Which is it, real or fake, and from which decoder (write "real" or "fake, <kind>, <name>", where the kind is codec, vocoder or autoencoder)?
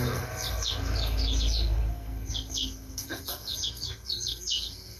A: fake, codec, SNAC